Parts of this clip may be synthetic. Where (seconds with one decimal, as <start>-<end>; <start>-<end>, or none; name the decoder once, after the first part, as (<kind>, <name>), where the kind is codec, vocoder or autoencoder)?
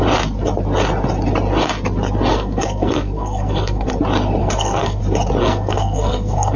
2.3-3.9 (codec, SNAC); 4.4-5.0; 5.4-6.6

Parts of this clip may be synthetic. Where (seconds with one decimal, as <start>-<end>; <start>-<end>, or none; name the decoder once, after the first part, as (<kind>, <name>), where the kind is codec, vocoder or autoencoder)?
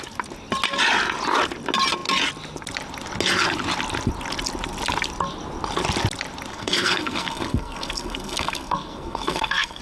6.5-9.8 (codec, SNAC)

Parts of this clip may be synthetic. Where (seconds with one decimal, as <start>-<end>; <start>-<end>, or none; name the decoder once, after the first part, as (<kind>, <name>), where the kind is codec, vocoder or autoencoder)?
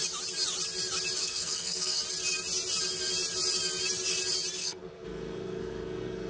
1.2-2.0 (codec, SNAC); 4.6-6.3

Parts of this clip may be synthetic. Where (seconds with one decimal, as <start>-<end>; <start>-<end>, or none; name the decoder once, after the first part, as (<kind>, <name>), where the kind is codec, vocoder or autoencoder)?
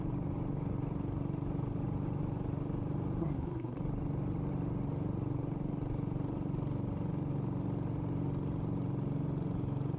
3.2-3.8 (codec, SNAC)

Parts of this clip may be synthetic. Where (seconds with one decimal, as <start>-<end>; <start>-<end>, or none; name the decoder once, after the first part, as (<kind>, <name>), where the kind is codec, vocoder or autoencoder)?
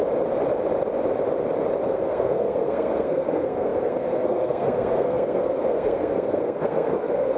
1.9-7.4 (codec, SNAC)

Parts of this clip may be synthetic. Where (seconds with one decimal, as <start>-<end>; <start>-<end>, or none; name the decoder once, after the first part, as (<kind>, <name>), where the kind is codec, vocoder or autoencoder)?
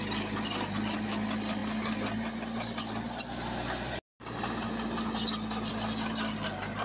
none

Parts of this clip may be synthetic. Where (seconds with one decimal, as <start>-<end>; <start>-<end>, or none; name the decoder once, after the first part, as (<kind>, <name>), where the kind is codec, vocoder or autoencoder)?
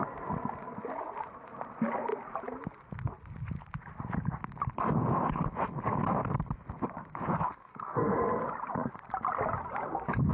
7.5-8.1 (codec, SNAC)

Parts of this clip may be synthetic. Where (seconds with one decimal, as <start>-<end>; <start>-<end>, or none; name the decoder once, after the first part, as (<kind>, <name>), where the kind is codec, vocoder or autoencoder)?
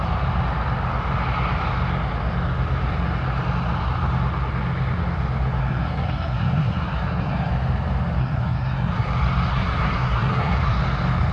5.6-7.5 (codec, SNAC); 8.2-9.1; 9.5-10.8